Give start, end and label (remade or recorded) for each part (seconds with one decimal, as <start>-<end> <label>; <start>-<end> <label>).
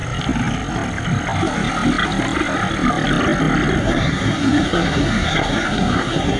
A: 0.0-3.8 recorded; 3.8-6.4 remade